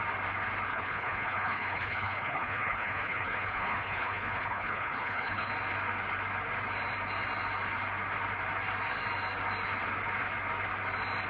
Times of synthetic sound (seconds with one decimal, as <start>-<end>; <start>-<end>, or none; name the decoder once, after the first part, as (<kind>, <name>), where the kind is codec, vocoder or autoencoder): 0.7-5.5 (codec, HILCodec)